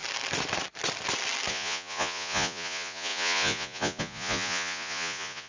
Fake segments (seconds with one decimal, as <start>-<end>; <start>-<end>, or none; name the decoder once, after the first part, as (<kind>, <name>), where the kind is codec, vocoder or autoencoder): 1.5-5.5 (vocoder, Vocos)